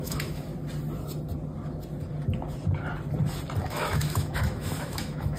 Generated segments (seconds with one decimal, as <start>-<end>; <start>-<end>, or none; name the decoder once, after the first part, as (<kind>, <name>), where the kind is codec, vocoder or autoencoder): 0.0-0.5 (autoencoder, DAC-VAE); 3.7-5.4